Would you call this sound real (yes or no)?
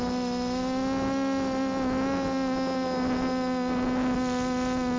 yes